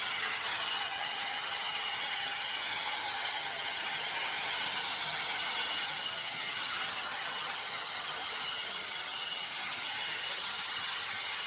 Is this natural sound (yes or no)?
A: no